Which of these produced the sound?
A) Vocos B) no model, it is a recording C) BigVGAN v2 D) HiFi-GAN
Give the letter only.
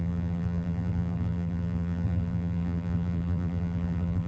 C